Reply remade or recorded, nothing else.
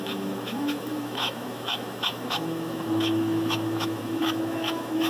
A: remade